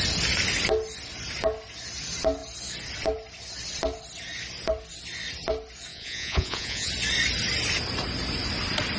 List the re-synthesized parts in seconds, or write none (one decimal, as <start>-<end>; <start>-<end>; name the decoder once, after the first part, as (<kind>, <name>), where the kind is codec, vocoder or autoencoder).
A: 5.9-6.9 (vocoder, Vocos)